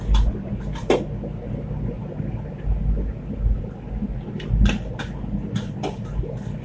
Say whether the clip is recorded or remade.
recorded